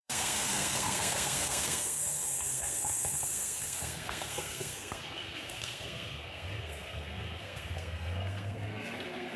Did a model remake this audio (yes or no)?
yes